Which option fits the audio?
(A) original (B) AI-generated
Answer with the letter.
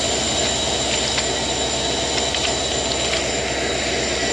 A